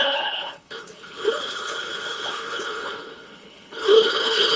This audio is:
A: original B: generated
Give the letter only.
B